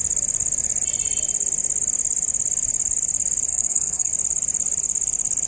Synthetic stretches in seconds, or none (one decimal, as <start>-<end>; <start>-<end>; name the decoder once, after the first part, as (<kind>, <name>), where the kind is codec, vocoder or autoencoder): 3.5-4.1 (codec, SNAC)